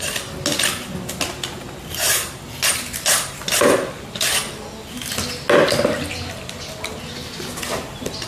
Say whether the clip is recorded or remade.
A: recorded